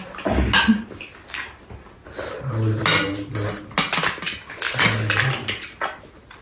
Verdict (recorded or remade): recorded